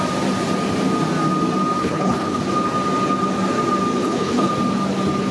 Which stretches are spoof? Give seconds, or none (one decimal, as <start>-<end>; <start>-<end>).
1.8-2.4; 4.0-4.5